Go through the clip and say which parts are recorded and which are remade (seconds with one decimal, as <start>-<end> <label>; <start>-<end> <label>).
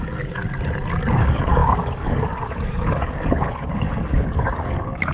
0.0-0.4 remade; 0.4-1.1 recorded; 1.1-5.1 remade